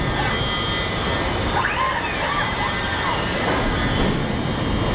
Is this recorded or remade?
recorded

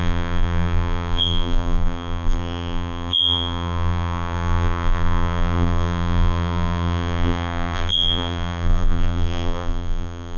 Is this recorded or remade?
remade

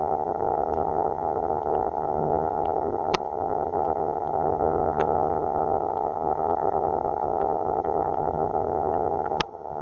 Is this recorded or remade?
remade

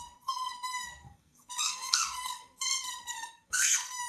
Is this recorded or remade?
remade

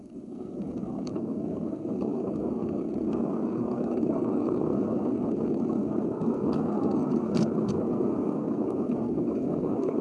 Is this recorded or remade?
remade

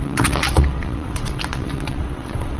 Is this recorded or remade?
remade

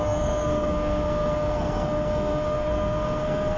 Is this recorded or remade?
remade